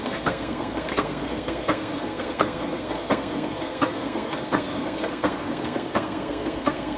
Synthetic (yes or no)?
yes